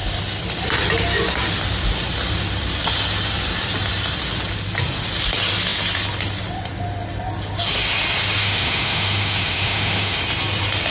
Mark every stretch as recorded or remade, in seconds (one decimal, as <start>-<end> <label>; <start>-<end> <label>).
0.0-8.4 recorded; 8.4-10.2 remade; 10.2-10.9 recorded